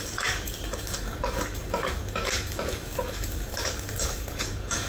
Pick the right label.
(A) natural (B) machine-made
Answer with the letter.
B